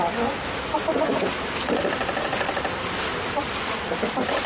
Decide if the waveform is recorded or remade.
recorded